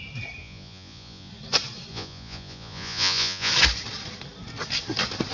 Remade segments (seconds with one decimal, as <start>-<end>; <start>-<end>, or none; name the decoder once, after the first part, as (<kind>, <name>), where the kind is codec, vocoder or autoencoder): 0.4-1.3 (vocoder, Vocos); 1.9-3.5

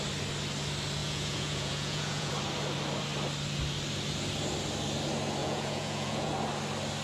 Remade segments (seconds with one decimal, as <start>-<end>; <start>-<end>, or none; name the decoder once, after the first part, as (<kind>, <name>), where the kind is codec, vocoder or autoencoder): 1.0-2.3 (vocoder, Vocos); 5.4-6.3

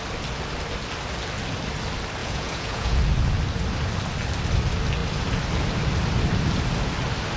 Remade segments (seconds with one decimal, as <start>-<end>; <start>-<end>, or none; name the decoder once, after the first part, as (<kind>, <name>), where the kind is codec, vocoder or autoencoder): 2.2-3.0 (vocoder, Vocos)

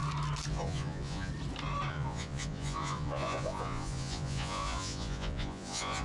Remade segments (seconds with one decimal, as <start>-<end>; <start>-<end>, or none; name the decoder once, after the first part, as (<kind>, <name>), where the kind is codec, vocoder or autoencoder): 0.5-1.3 (vocoder, Vocos); 1.9-6.0

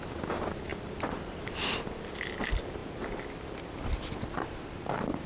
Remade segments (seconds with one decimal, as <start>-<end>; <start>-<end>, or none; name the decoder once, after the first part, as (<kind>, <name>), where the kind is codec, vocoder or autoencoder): none

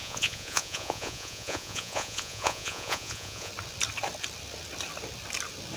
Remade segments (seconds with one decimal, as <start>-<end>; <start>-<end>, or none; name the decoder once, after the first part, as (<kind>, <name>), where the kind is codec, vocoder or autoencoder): 0.0-3.5 (vocoder, Vocos)

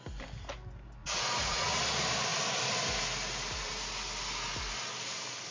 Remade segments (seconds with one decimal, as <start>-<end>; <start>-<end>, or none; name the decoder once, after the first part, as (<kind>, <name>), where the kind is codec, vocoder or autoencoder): 1.0-1.8 (vocoder, Vocos)

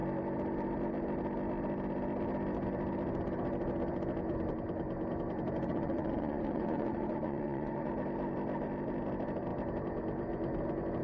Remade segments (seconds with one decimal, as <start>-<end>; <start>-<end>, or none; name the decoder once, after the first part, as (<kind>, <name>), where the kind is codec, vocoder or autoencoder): 5.7-7.9 (vocoder, Vocos)